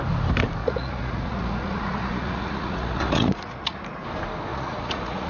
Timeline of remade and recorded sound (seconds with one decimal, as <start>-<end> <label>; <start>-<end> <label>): 0.0-0.6 recorded; 0.6-3.8 remade; 3.8-4.5 recorded; 4.5-5.3 remade